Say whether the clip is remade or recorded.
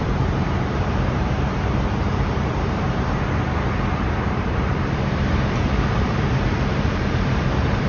remade